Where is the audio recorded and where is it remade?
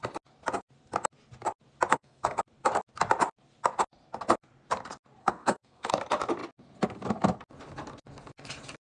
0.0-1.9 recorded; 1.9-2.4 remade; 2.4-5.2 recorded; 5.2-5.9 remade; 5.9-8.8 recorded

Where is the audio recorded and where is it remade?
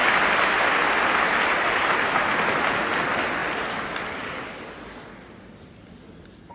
0.0-6.5 recorded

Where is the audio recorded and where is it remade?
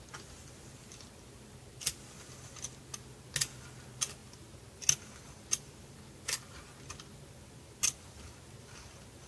0.0-9.3 recorded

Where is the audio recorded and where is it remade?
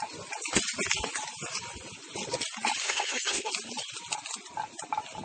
0.0-2.8 recorded; 2.8-3.5 remade; 3.5-5.2 recorded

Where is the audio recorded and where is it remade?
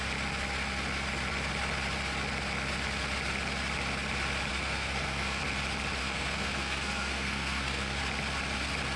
0.0-4.5 recorded; 4.5-5.4 remade; 5.4-6.0 recorded; 6.0-8.0 remade; 8.0-9.0 recorded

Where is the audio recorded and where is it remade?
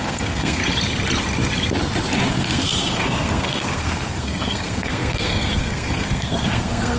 0.0-0.6 remade; 0.6-2.3 recorded; 2.3-7.0 remade